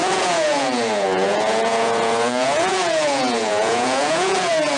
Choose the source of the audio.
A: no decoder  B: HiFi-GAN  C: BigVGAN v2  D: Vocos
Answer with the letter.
D